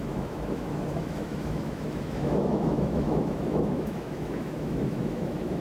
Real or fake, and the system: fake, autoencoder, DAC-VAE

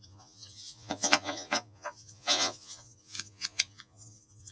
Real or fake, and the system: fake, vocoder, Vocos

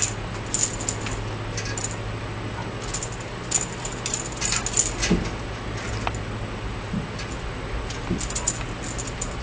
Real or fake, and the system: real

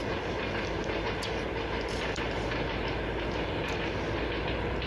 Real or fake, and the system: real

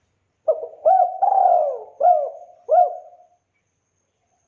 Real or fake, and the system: real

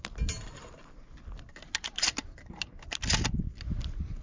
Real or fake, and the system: real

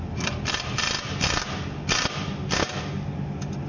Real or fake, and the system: real